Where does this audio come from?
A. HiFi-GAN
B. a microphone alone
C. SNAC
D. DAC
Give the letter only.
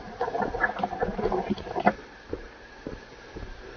B